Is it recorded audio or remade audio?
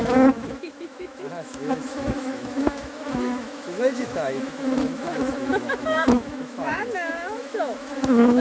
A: remade